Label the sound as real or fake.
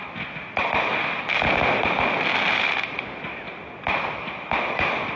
real